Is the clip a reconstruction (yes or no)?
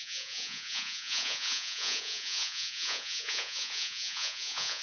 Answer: yes